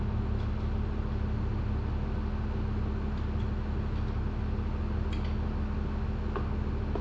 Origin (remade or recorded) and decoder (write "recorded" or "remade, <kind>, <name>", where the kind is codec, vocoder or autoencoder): recorded